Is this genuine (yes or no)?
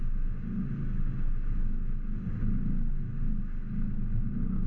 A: yes